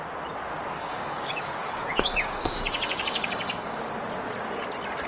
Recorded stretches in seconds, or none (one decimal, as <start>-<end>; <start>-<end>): 0.0-0.8; 3.9-5.1